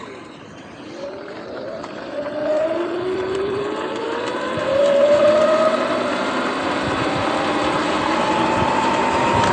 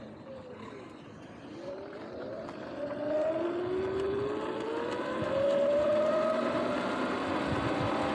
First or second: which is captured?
second